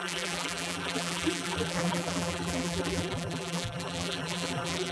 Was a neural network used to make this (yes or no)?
yes